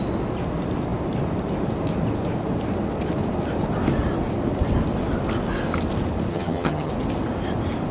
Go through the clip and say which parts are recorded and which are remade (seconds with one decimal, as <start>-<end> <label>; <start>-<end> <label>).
0.0-6.3 recorded; 6.3-6.9 remade; 6.9-7.9 recorded